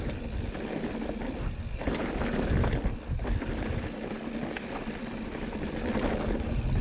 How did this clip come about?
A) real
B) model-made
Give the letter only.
A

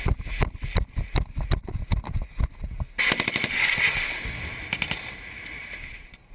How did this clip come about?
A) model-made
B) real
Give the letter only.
B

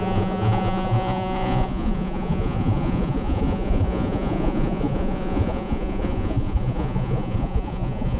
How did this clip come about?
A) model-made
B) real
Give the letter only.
A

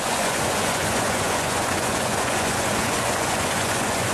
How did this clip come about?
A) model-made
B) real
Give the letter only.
A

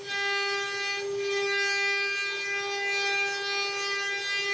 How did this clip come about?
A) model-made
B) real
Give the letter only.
B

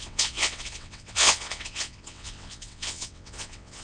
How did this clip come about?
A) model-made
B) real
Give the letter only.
A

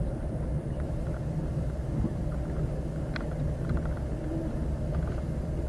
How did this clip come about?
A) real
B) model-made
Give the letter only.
A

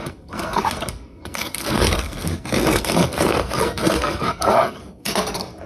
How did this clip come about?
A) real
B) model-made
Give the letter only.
B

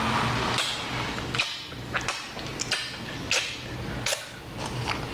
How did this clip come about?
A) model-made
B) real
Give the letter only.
B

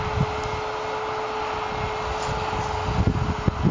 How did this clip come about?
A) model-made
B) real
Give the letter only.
B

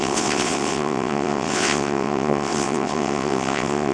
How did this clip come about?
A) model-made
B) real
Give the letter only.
A